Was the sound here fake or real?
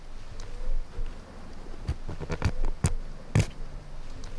real